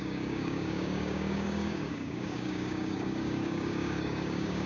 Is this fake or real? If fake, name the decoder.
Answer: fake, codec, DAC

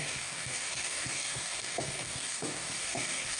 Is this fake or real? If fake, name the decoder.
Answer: fake, codec, DAC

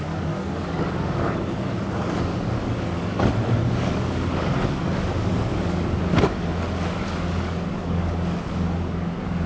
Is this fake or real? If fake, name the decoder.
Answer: fake, codec, DAC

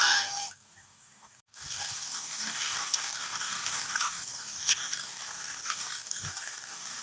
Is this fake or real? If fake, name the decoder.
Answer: fake, codec, DAC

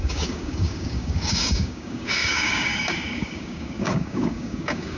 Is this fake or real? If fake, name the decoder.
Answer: fake, codec, DAC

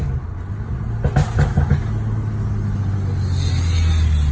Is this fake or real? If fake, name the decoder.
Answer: real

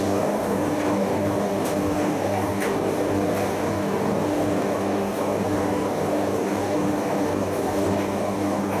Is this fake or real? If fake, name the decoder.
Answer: fake, codec, DAC